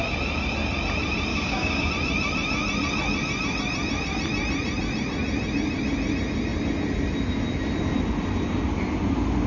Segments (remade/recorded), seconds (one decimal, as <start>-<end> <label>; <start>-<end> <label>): 0.0-1.3 recorded; 1.3-1.9 remade; 1.9-9.5 recorded